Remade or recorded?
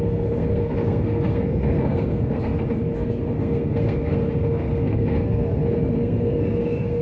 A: remade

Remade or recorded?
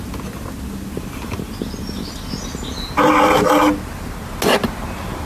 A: recorded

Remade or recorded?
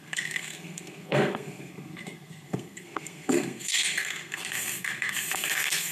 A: remade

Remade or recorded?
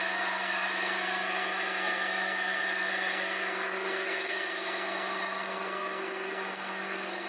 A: remade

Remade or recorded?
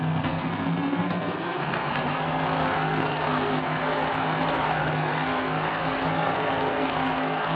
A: remade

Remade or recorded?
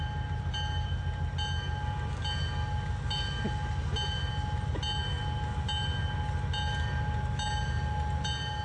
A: recorded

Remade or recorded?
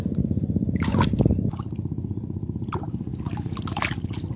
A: recorded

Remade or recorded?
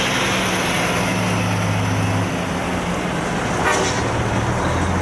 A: recorded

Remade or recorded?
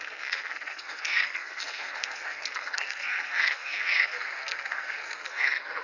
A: remade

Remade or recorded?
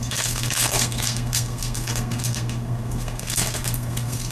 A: remade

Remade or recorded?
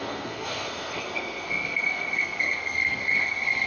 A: remade